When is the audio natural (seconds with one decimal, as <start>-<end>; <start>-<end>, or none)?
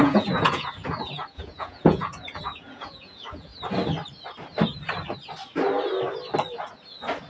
3.5-7.3